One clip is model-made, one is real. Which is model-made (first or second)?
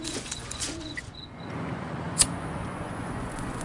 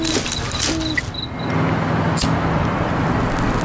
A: first